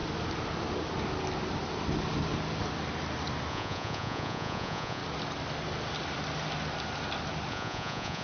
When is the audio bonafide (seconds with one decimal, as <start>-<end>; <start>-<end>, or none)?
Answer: 0.0-3.5; 5.0-7.5